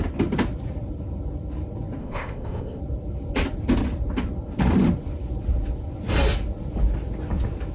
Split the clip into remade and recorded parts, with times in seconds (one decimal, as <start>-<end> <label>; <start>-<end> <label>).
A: 0.0-2.0 recorded; 2.0-2.8 remade; 2.8-7.7 recorded